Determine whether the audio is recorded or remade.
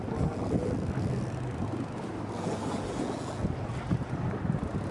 recorded